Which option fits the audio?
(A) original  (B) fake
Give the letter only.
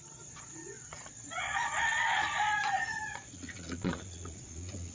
B